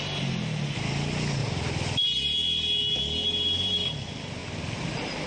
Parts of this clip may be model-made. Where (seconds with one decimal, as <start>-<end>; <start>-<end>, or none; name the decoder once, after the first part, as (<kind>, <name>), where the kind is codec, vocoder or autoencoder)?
1.4-2.0 (vocoder, BigVGAN v2); 4.4-5.3